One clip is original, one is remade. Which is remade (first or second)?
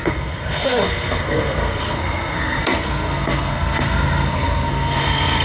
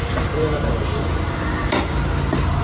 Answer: first